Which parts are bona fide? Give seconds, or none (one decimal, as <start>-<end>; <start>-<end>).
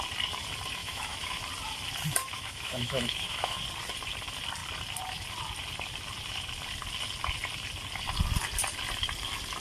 0.0-0.8; 1.4-2.2; 3.6-9.6